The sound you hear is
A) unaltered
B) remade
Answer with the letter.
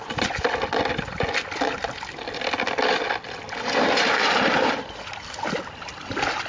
A